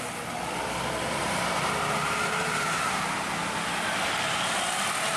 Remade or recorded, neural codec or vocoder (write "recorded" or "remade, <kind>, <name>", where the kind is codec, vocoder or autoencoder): recorded